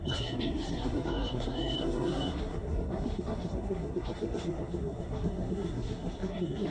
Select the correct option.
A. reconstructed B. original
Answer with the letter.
A